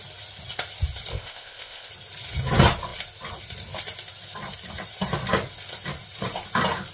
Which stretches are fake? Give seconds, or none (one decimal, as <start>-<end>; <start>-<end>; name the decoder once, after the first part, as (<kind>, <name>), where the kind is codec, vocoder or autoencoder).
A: 1.1-1.9 (codec, ZipCodec)